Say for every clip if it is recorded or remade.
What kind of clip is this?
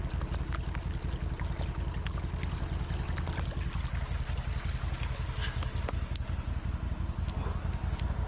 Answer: recorded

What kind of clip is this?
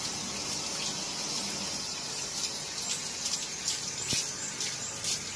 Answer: recorded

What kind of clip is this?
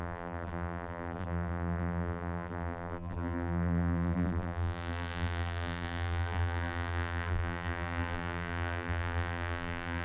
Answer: remade